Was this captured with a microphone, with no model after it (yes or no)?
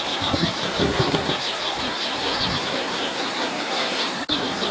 no